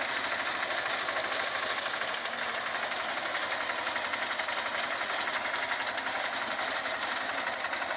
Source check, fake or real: real